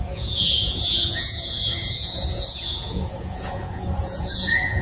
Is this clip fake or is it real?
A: fake